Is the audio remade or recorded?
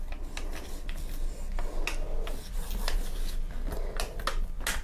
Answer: recorded